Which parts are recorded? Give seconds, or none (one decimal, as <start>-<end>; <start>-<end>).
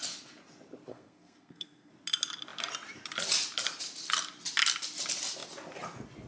0.0-0.9; 1.9-6.3